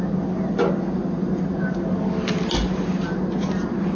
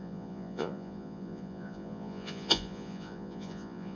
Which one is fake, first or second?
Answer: second